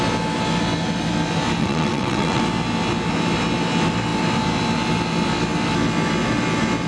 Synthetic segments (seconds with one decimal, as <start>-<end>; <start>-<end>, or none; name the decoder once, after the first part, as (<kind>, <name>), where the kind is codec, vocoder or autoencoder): 1.6-2.4 (vocoder, WaveNeXt)